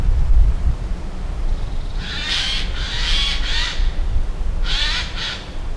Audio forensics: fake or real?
real